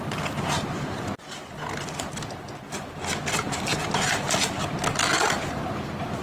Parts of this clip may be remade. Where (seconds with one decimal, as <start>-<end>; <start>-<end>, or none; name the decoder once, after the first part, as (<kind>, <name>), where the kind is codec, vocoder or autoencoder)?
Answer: none